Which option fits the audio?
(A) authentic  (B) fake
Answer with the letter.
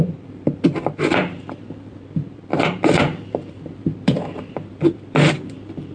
B